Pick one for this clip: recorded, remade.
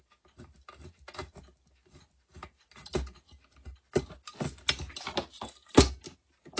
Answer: recorded